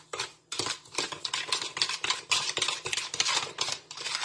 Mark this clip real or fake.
real